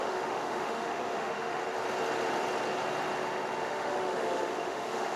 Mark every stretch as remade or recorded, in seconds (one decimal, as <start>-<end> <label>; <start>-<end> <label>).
0.0-1.6 remade; 1.6-3.6 recorded; 3.6-5.2 remade